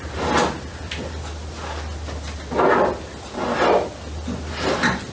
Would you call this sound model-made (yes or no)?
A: no